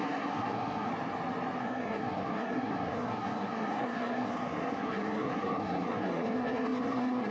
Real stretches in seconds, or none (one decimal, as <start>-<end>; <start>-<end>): 0.9-1.6